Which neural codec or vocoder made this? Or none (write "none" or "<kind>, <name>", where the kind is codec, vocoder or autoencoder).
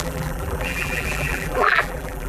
vocoder, BigVGAN v2